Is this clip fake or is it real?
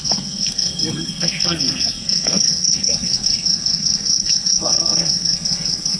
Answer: fake